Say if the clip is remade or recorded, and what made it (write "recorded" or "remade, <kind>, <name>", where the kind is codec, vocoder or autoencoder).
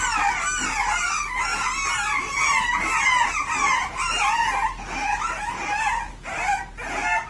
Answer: recorded